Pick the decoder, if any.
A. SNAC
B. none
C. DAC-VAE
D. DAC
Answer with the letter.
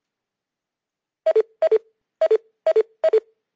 B